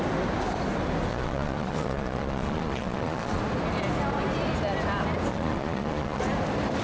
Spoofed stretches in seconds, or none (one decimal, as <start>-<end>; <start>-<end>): 1.1-3.4; 5.3-6.2

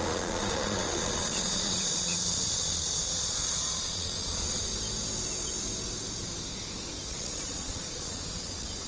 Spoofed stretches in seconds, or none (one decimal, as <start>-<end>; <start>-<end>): 0.0-4.7; 7.1-8.9

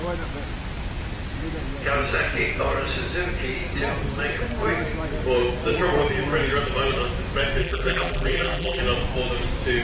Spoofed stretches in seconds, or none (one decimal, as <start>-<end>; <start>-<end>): 7.6-8.8